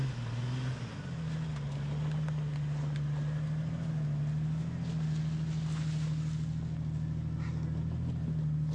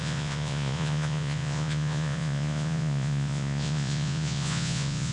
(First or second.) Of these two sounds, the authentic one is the first